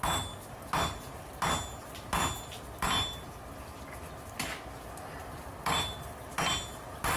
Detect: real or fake real